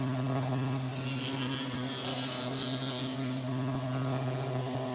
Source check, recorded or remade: recorded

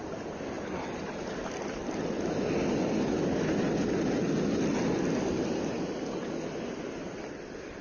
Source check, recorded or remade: recorded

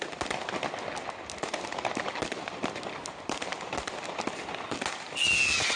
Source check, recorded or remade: recorded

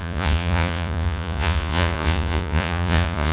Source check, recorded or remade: remade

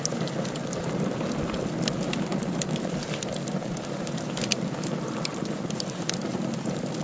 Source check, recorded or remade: recorded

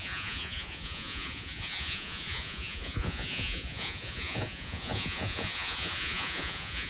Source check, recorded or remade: remade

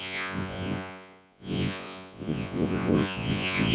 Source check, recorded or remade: remade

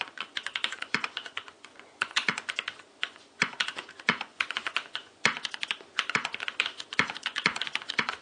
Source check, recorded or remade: remade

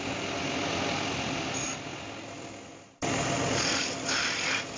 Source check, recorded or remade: recorded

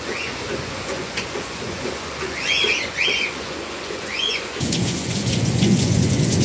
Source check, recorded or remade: remade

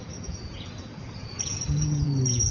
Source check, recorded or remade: remade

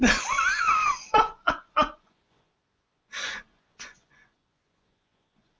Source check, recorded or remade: remade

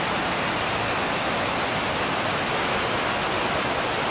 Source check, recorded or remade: recorded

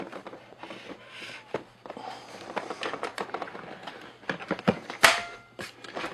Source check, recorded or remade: recorded